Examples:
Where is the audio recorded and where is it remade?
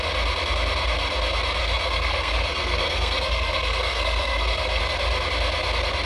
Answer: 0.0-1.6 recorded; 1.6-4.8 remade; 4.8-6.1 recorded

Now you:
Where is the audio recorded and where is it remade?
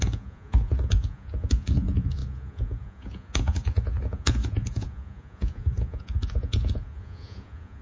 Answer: 0.0-7.8 remade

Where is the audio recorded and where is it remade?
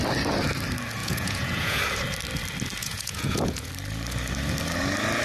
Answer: 0.0-1.0 recorded; 1.0-1.8 remade; 1.8-2.8 recorded; 2.8-3.7 remade; 3.7-5.2 recorded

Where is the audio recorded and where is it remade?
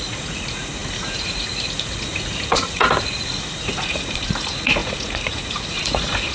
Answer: 0.0-6.3 remade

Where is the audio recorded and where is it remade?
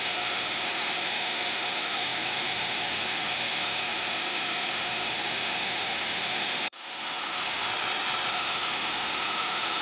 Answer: 0.0-7.7 remade; 7.7-8.3 recorded; 8.3-9.8 remade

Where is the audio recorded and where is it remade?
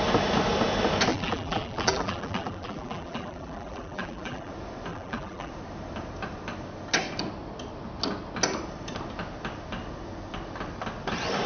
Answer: 0.0-1.1 recorded; 1.1-4.5 remade; 4.5-4.9 recorded; 4.9-5.5 remade; 5.5-11.5 recorded